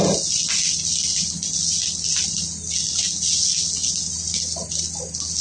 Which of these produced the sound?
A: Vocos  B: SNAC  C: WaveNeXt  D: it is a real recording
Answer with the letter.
D